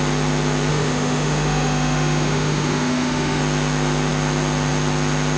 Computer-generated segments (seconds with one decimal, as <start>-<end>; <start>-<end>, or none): 0.7-3.4